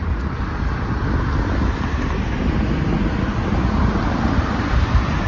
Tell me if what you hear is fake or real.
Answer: real